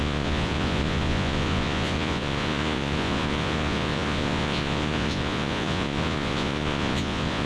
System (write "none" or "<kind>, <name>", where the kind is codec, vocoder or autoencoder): vocoder, Vocos